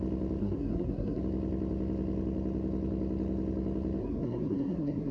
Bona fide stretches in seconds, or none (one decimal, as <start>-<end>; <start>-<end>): 0.0-0.4; 1.2-4.0